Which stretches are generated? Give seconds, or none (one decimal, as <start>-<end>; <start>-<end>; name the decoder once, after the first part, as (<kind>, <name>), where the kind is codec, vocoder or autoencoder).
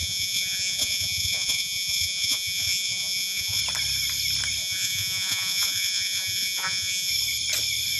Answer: 0.0-3.6 (vocoder, Vocos); 4.6-7.1